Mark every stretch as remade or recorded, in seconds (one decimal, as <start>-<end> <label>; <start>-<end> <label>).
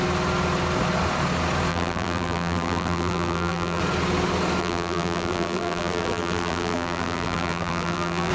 0.0-1.7 recorded; 1.7-3.8 remade; 3.8-4.6 recorded; 4.6-8.3 remade